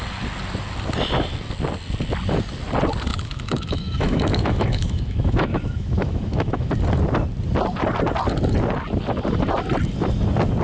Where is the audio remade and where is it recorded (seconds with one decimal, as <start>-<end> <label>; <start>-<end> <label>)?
0.0-3.1 recorded; 3.1-6.7 remade; 6.7-10.6 recorded